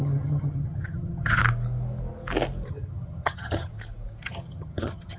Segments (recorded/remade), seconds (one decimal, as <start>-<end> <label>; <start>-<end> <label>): 0.0-1.4 remade; 1.4-2.7 recorded; 2.7-3.7 remade; 3.7-4.2 recorded; 4.2-5.2 remade